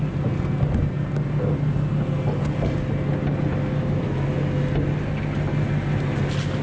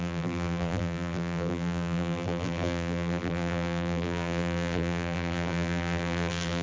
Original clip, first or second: first